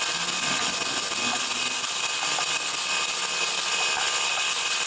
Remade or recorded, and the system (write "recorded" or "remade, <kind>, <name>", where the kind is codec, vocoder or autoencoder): recorded